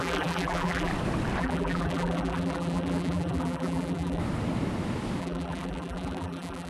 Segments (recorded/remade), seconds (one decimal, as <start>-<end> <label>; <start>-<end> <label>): 0.0-0.9 remade; 0.9-1.4 recorded; 1.4-4.2 remade; 4.2-5.2 recorded; 5.2-6.7 remade